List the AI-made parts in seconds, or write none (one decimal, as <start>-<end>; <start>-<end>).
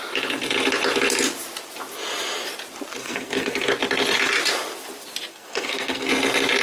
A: 3.0-3.7; 5.3-6.1